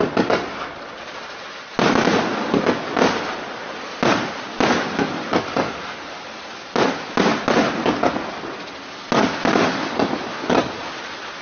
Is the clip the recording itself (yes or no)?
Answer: yes